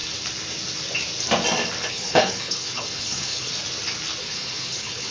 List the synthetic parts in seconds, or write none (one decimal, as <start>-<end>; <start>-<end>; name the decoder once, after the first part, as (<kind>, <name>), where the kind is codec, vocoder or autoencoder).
1.9-3.5 (codec, HILCodec); 4.2-5.1